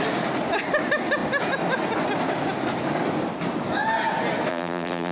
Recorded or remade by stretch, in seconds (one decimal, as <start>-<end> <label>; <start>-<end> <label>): 0.0-4.5 recorded; 4.5-5.1 remade